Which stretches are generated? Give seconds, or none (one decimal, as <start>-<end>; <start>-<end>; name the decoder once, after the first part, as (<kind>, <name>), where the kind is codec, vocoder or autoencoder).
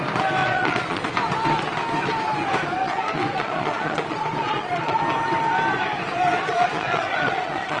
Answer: 0.4-1.1 (vocoder, Vocos); 2.8-5.0; 6.4-7.8